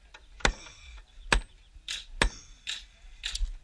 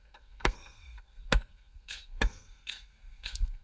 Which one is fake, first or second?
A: second